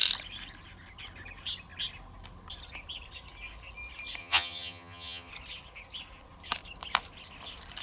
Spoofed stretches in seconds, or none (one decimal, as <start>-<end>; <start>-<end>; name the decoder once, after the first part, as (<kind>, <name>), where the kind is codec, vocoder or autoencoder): 4.2-5.3 (vocoder, HiFi-GAN)